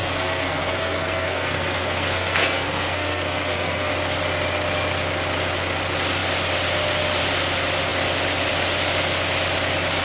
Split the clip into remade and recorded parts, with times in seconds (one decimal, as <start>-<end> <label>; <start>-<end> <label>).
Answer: 0.0-3.9 remade; 3.9-10.0 recorded